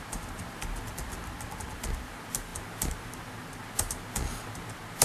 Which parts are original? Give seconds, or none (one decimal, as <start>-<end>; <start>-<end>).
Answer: 0.0-5.0